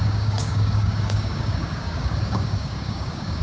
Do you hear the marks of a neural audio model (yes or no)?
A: yes